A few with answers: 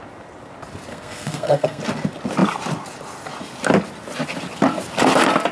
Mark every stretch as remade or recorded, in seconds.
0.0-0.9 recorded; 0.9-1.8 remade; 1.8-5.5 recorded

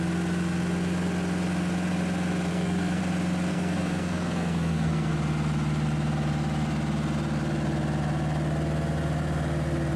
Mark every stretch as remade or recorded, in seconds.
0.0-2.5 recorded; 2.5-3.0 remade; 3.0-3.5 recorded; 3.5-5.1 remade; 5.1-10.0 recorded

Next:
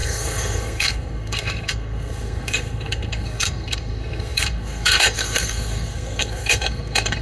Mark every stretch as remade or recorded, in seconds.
0.0-7.2 remade